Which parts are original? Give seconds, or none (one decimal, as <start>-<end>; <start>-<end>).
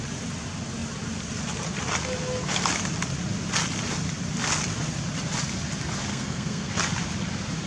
0.0-6.1; 6.7-7.7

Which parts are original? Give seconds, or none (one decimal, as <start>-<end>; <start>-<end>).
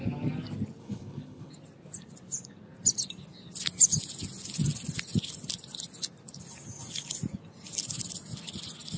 0.0-0.8; 1.5-9.0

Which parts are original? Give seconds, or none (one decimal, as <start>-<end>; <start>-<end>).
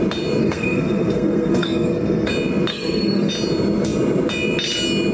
0.0-0.4; 2.3-2.7; 3.3-5.1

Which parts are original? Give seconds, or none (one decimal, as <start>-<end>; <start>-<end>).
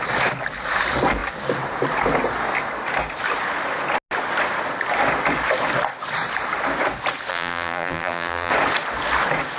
0.0-7.3; 8.5-9.6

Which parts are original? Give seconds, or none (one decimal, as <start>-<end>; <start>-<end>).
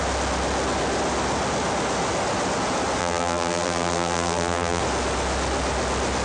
0.0-3.0; 4.8-6.2